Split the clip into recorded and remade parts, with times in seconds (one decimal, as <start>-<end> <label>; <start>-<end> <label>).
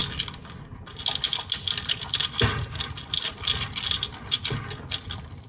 0.0-5.5 recorded